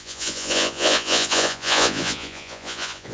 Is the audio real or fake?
fake